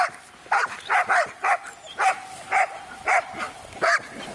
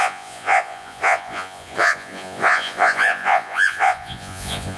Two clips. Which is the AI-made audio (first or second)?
second